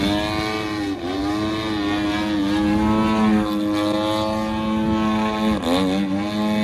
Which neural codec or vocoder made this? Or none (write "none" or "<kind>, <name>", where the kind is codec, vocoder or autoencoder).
none